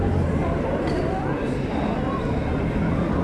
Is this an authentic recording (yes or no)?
yes